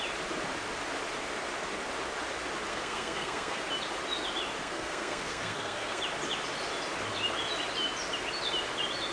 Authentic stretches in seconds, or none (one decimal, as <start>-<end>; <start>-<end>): 0.0-2.7; 3.6-4.6; 6.0-9.1